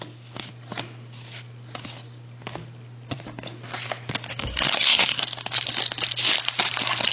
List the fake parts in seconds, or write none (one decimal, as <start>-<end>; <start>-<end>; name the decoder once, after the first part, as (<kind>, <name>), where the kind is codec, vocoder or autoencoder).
4.3-5.2 (codec, SNAC)